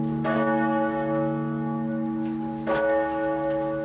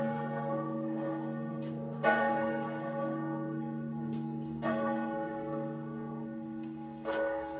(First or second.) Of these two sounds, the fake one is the second